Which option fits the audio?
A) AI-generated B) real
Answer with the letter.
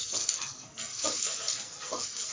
A